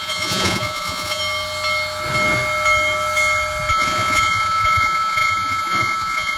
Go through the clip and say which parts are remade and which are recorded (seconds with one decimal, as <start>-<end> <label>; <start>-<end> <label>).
0.0-1.2 remade; 1.2-3.7 recorded; 3.7-6.4 remade